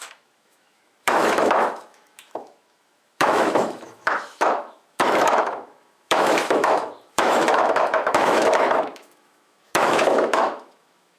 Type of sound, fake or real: fake